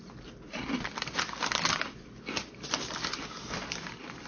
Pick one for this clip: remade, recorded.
recorded